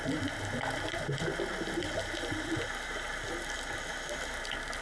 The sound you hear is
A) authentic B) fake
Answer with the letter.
A